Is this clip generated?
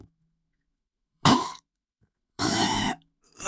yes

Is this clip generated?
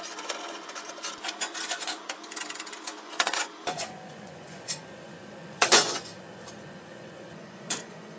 yes